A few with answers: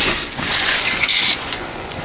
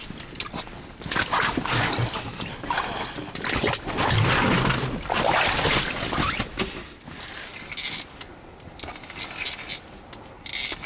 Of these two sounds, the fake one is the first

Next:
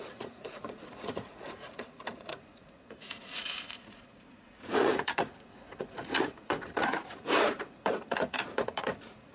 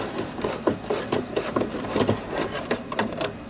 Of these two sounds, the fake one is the first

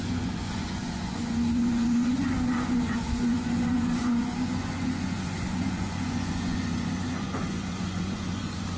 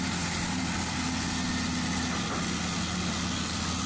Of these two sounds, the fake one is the first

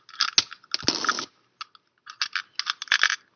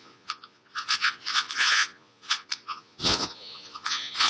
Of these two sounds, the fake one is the second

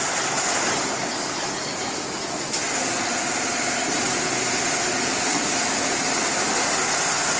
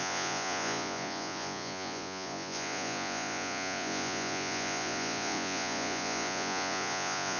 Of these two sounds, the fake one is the second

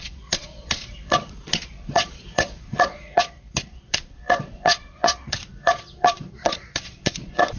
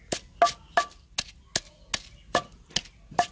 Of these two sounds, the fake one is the first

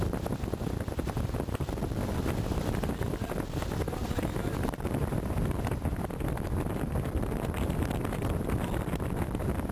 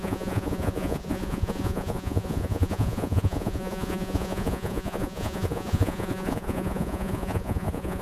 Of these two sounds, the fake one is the second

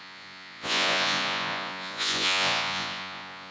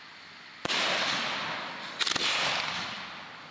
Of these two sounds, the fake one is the first